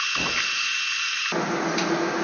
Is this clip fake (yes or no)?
no